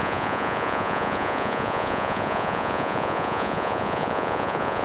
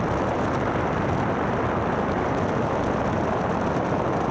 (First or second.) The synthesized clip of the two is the first